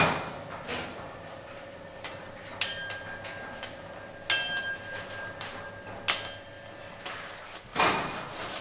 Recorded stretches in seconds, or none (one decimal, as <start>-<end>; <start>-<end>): 0.0-8.6